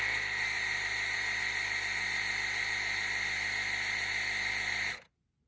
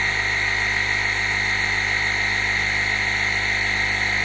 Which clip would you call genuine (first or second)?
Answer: second